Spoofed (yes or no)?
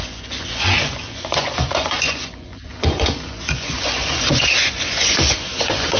yes